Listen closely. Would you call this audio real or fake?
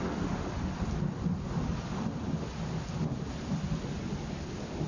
real